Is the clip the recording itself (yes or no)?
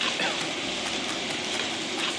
yes